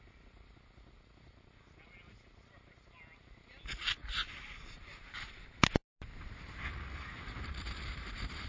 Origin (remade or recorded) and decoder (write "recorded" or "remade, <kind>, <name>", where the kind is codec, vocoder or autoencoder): recorded